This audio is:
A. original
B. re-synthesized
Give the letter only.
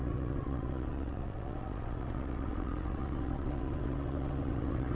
B